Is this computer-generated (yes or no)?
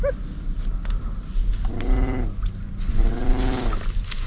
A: no